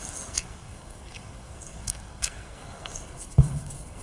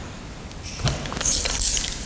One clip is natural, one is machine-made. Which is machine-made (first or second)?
first